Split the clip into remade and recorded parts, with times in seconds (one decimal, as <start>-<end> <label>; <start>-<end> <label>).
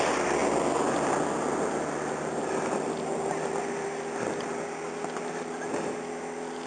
0.0-6.7 recorded